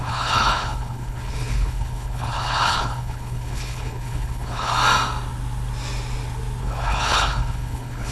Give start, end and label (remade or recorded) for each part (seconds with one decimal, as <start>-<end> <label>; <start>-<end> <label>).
0.0-4.7 remade; 4.7-6.6 recorded; 6.6-8.1 remade